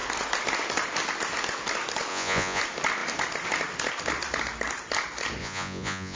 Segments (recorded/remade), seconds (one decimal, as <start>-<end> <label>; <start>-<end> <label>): 0.0-2.1 recorded; 2.1-2.6 remade; 2.6-5.4 recorded; 5.4-6.2 remade